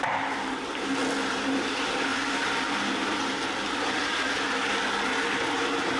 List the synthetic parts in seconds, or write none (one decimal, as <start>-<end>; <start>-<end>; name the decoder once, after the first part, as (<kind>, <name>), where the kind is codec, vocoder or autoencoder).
none